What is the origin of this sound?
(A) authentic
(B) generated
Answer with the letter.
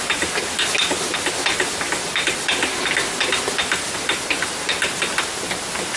A